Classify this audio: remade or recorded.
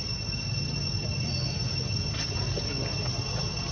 recorded